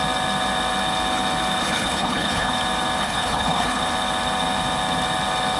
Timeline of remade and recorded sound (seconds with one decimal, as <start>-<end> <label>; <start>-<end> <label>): 0.0-1.6 recorded; 1.6-2.5 remade; 2.5-3.0 recorded; 3.0-3.8 remade; 3.8-5.6 recorded